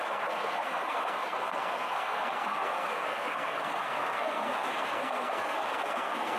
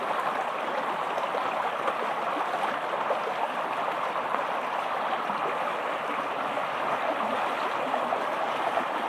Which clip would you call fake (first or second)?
first